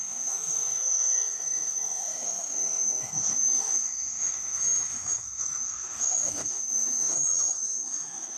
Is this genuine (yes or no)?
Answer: no